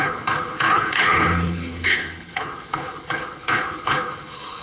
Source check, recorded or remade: remade